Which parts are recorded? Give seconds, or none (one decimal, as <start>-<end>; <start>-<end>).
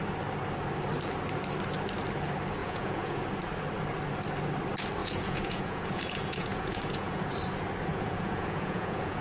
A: 0.0-2.6; 3.2-5.0; 7.3-7.9